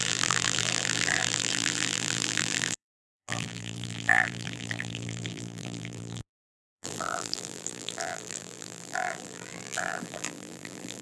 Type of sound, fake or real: fake